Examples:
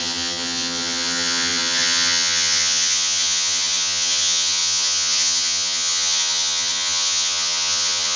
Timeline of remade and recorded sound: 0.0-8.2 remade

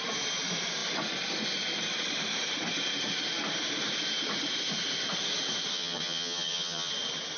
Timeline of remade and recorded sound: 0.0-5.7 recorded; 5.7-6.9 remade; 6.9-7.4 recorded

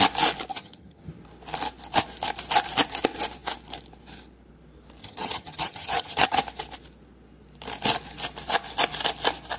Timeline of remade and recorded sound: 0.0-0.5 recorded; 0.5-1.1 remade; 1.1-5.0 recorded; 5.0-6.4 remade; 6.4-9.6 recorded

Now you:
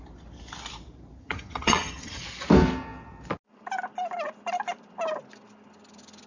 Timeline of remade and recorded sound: 0.0-1.2 recorded; 1.2-2.2 remade; 2.2-6.3 recorded